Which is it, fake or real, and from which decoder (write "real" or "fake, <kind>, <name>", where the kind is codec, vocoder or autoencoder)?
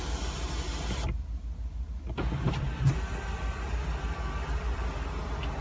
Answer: real